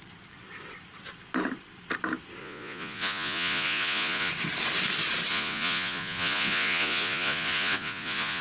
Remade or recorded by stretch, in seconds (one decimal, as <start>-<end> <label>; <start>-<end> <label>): 0.0-2.4 recorded; 2.4-4.3 remade; 4.3-5.3 recorded; 5.3-8.4 remade